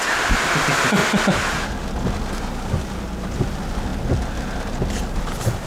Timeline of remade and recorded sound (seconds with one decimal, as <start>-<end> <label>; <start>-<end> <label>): 0.0-5.7 recorded